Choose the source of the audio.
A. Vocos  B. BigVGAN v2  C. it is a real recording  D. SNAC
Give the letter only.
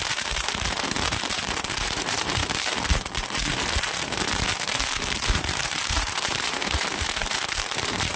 B